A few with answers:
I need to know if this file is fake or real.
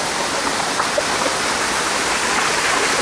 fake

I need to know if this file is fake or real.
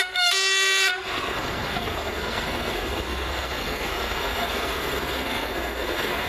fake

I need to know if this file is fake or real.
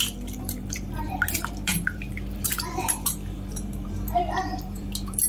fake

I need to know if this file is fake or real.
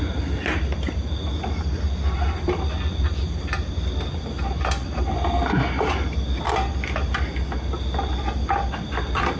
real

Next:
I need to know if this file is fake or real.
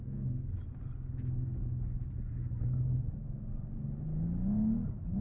real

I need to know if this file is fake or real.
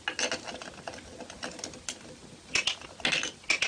real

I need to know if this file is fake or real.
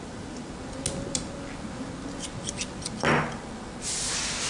real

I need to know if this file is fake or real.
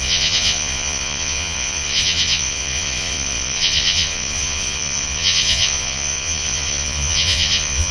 fake